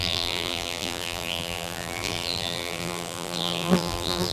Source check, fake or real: fake